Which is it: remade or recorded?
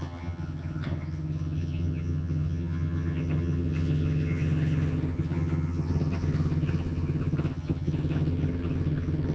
remade